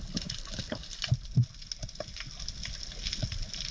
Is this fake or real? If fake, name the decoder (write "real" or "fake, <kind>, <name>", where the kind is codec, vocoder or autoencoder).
real